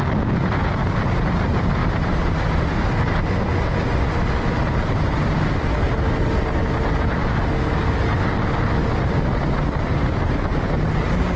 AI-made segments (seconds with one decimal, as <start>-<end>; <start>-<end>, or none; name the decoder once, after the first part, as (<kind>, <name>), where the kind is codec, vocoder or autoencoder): 1.8-2.4 (vocoder, BigVGAN v2)